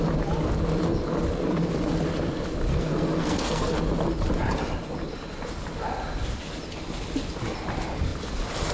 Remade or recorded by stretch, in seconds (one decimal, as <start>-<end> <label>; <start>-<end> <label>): 0.0-2.7 recorded; 2.7-3.8 remade; 3.8-8.7 recorded